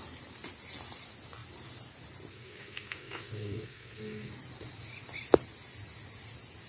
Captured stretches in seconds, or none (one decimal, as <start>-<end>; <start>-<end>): 0.0-2.3; 4.3-6.7

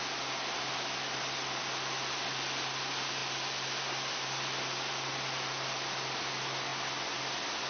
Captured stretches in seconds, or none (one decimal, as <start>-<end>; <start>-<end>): 0.0-7.7